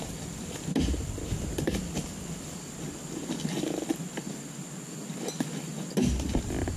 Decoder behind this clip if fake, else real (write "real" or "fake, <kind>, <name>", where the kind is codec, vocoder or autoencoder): real